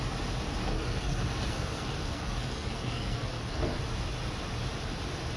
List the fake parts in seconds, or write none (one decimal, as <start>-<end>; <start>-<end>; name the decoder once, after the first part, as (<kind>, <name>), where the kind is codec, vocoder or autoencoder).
0.6-3.8 (codec, SNAC)